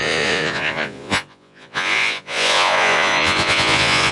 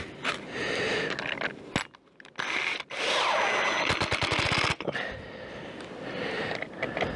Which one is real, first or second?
second